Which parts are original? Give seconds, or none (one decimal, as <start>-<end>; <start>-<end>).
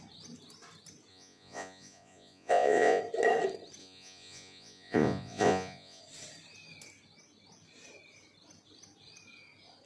0.0-1.1; 3.0-3.8; 6.0-9.9